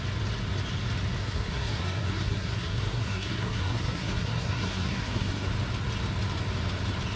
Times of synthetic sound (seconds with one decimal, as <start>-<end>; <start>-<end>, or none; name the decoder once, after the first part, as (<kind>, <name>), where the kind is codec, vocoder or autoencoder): 1.2-5.5 (codec, SNAC)